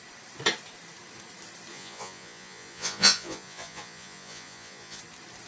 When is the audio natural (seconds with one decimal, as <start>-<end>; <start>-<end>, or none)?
0.0-1.7; 5.0-5.5

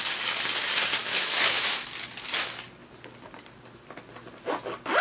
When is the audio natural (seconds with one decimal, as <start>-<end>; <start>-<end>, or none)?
0.0-1.0; 1.8-5.0

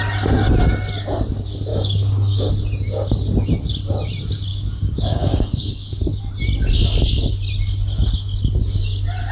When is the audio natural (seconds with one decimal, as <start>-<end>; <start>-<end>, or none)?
0.0-1.7; 2.5-4.5; 6.2-9.3

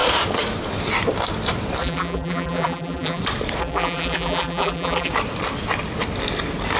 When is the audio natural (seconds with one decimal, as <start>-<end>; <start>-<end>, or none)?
0.0-1.8; 3.2-3.6; 5.1-6.8

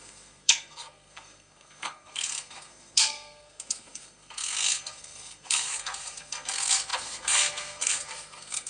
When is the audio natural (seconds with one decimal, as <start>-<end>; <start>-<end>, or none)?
none